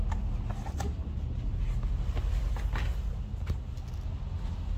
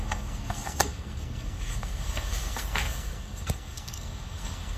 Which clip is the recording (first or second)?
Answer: first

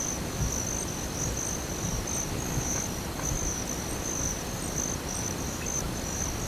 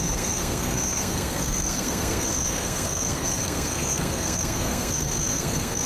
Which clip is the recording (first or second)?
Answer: first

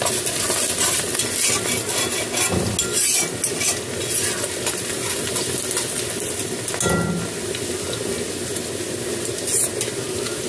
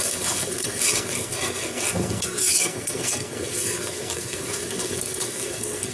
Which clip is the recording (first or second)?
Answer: first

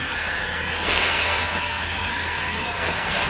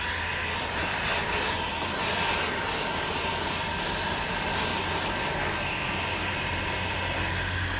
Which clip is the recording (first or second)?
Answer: second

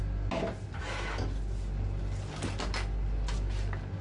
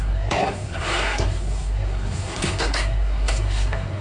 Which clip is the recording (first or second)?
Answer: first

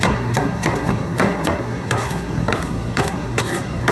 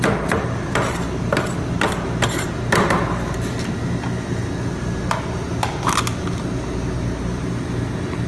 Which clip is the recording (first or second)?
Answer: second